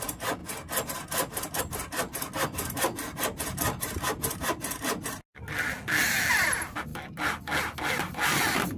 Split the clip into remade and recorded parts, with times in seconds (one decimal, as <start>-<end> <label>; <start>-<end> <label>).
0.0-8.8 recorded